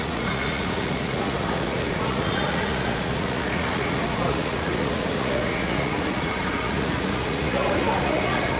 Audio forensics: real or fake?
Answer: fake